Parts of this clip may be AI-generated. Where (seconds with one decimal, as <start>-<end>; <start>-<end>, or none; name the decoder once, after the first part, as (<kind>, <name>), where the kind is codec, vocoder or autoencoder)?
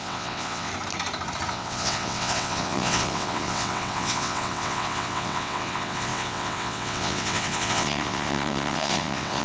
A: 0.0-0.7 (vocoder, WaveNeXt); 1.5-9.4